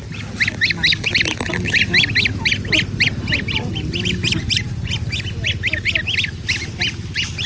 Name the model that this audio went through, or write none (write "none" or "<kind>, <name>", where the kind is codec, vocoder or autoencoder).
none